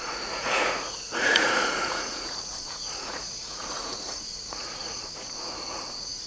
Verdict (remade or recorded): remade